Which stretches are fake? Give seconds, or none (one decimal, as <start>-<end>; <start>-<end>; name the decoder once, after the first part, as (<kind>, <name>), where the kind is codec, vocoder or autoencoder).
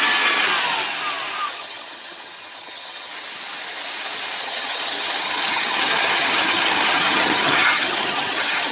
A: 0.0-0.5 (vocoder, HiFi-GAN); 1.5-3.1; 4.4-8.7